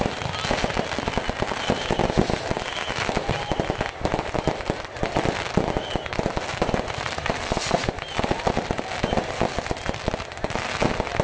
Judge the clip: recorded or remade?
recorded